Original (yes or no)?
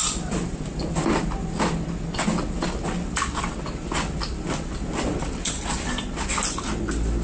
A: yes